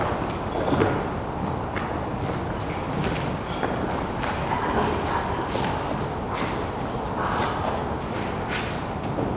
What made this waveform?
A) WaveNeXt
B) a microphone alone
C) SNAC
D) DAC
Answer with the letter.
B